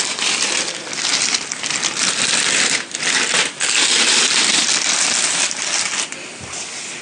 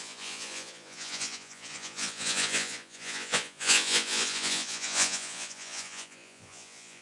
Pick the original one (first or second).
first